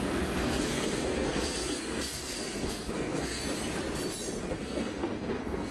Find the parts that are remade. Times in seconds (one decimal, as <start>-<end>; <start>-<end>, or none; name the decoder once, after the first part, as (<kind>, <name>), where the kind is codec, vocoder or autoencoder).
0.0-3.4 (codec, SNAC); 4.4-5.7